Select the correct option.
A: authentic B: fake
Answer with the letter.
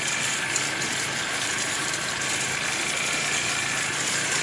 A